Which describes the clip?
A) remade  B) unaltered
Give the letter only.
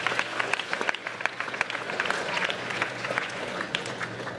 A